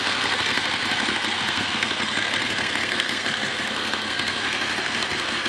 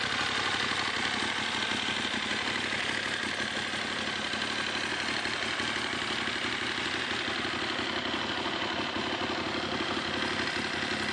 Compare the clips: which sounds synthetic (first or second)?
first